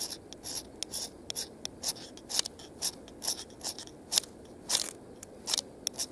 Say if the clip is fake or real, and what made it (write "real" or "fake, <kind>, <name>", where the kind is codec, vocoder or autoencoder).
real